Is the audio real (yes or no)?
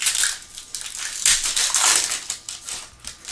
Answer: yes